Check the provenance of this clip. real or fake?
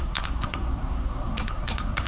fake